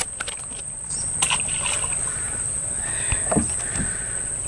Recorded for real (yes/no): yes